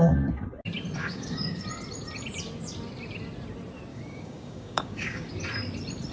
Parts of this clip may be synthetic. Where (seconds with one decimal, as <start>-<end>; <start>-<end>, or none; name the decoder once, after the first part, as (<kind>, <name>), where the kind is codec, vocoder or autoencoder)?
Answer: 1.0-1.6 (codec, DAC); 3.9-5.3